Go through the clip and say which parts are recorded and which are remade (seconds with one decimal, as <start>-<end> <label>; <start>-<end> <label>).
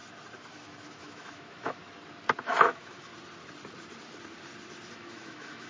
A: 0.0-0.5 recorded; 0.5-1.8 remade; 1.8-2.4 recorded; 2.4-3.1 remade; 3.1-4.9 recorded; 4.9-5.7 remade